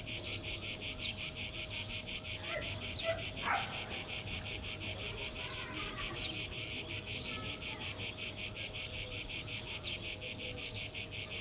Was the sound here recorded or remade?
recorded